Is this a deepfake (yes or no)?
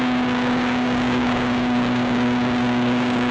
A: yes